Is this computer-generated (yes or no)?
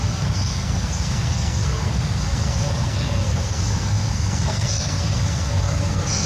yes